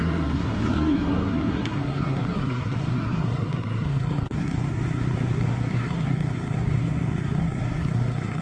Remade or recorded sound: remade